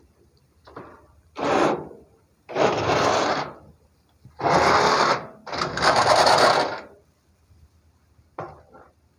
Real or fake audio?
fake